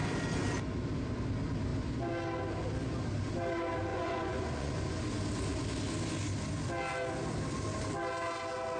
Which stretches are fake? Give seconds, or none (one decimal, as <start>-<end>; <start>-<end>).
3.9-5.0